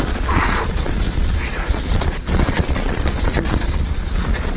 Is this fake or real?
fake